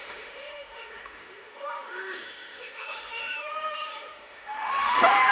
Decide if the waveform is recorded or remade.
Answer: remade